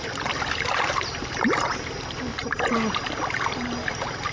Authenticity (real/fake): fake